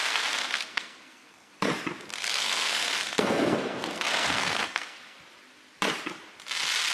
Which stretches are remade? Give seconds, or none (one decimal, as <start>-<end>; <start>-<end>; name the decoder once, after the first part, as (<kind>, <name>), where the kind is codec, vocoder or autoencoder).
0.0-1.5 (codec, SNAC); 2.1-5.2